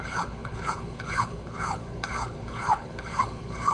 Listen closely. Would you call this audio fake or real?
fake